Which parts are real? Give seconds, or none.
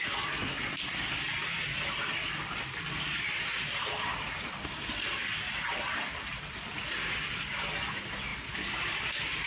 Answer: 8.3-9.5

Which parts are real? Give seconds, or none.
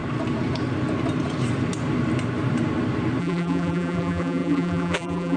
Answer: 0.0-3.2